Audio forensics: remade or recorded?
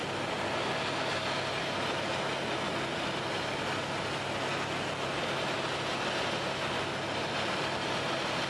recorded